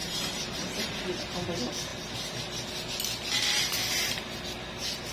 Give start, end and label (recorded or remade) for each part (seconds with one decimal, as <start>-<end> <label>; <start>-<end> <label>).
0.0-1.0 remade; 1.0-5.1 recorded